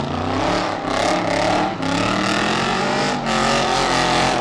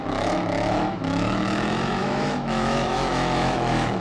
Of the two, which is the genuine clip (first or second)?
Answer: first